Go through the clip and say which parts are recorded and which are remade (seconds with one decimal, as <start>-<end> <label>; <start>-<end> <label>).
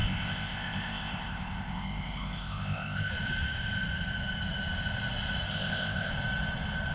0.0-3.1 remade; 3.1-5.5 recorded; 5.5-6.1 remade; 6.1-6.9 recorded